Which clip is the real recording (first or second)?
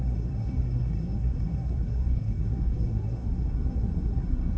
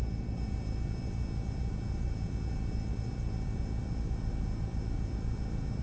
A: second